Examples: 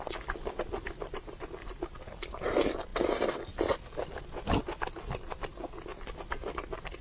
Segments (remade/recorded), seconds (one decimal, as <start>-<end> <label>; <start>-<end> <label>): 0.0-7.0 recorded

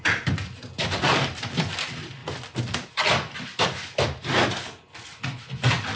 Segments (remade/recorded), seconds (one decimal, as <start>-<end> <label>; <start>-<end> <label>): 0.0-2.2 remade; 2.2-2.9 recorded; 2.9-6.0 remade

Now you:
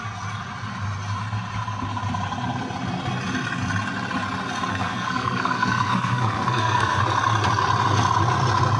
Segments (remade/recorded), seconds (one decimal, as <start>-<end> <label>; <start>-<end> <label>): 0.0-4.7 recorded; 4.7-7.0 remade; 7.0-8.8 recorded

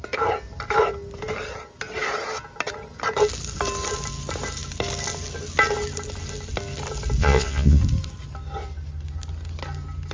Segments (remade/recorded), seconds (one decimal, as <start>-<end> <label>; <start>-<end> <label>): 0.0-7.2 recorded; 7.2-7.8 remade; 7.8-10.1 recorded

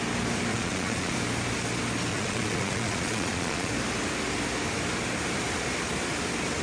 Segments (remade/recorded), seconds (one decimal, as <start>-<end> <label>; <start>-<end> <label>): 0.0-0.5 recorded; 0.5-1.1 remade; 1.1-2.1 recorded; 2.1-3.7 remade; 3.7-6.6 recorded

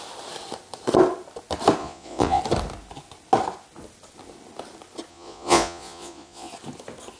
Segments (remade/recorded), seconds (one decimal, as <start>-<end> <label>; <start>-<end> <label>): 0.0-1.8 recorded; 1.8-2.4 remade; 2.4-5.1 recorded; 5.1-6.5 remade; 6.5-7.2 recorded

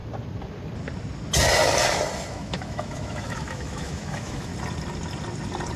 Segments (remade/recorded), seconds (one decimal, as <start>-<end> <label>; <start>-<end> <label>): 0.0-2.3 recorded; 2.3-4.5 remade; 4.5-5.8 recorded

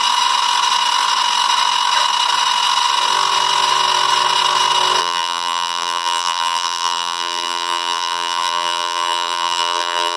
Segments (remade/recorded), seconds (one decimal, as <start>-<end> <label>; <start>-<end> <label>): 0.0-5.0 recorded; 5.0-10.2 remade